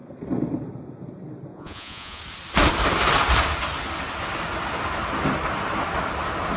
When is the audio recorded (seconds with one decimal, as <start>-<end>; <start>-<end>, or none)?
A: 0.0-1.5; 2.2-6.6